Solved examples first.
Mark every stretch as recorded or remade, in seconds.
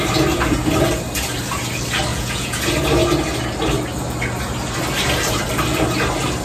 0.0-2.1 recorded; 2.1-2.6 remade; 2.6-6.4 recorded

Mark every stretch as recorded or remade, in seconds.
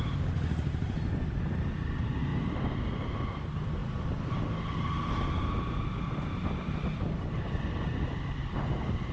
0.0-9.1 recorded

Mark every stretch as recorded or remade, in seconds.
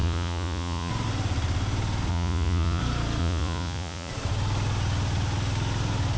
0.0-0.9 remade; 0.9-2.1 recorded; 2.1-2.8 remade; 2.8-3.2 recorded; 3.2-4.1 remade; 4.1-6.2 recorded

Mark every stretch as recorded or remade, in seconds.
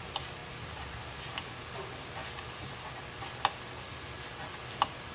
0.0-5.1 recorded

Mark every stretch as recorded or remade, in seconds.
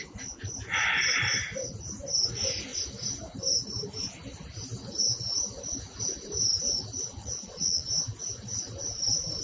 0.0-7.2 recorded; 7.2-7.9 remade; 7.9-9.4 recorded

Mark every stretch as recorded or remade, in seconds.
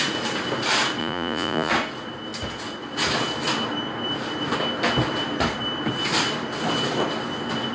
0.0-1.0 recorded; 1.0-1.7 remade; 1.7-7.7 recorded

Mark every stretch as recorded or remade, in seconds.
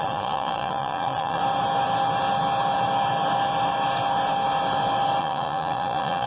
0.0-1.4 remade; 1.4-5.2 recorded; 5.2-6.3 remade